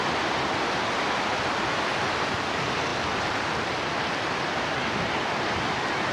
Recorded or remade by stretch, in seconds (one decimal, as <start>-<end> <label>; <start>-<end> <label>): 0.0-6.1 recorded